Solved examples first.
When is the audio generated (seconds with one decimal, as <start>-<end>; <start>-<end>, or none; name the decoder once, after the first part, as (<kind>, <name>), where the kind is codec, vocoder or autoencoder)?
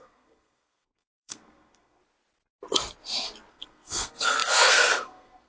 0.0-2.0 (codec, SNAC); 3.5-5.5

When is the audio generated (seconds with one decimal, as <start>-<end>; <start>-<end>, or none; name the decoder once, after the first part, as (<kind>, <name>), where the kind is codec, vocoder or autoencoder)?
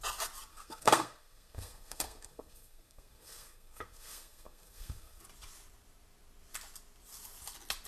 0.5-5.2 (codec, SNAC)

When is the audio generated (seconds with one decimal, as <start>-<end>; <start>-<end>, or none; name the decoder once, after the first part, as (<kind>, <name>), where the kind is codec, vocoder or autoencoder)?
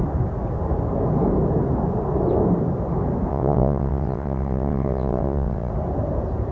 3.3-5.7 (vocoder, WaveNeXt)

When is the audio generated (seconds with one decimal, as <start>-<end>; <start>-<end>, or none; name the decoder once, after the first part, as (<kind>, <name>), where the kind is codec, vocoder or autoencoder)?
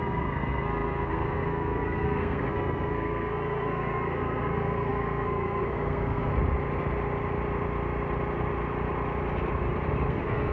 0.0-6.3 (codec, SNAC); 10.1-10.5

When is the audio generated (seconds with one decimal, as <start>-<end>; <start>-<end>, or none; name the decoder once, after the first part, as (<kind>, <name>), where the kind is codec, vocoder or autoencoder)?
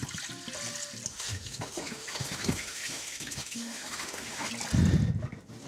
1.1-4.5 (autoencoder, DAC-VAE)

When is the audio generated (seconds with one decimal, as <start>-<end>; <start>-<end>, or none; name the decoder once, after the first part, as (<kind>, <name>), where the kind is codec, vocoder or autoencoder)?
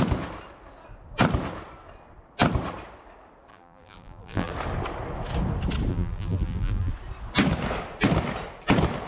3.5-4.5 (vocoder, BigVGAN v2); 5.9-6.9